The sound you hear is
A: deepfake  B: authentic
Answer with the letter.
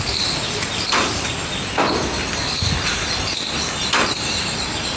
B